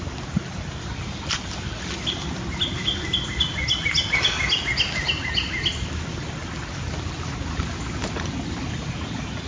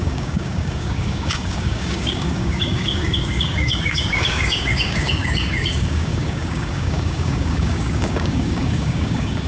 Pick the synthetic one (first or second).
second